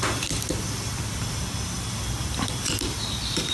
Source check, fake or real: real